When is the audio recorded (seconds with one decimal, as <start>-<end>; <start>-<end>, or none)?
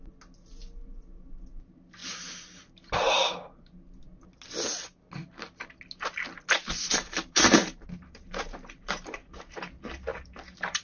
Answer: 0.0-6.6; 9.4-10.1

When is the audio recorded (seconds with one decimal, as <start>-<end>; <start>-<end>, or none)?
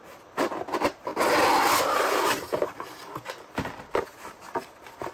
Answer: 1.1-2.0; 3.0-3.8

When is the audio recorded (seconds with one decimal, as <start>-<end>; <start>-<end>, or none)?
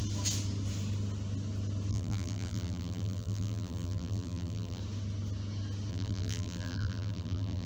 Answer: 0.0-1.9; 4.8-5.9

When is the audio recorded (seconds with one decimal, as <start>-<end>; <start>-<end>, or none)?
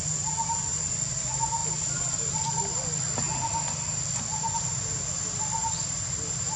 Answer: 0.0-6.6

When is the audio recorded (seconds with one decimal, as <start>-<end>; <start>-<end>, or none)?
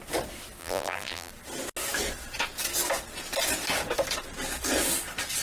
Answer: 0.0-0.6; 1.3-5.4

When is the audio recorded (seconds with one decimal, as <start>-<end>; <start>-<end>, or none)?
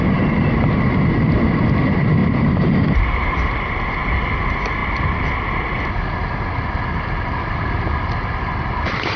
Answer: 4.8-7.9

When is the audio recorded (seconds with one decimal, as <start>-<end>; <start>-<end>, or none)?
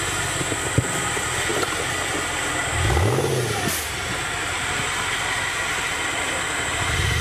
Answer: 0.0-7.2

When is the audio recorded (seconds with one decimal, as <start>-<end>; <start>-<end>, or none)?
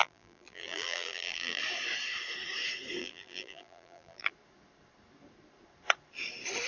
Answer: 1.6-3.0; 4.3-6.7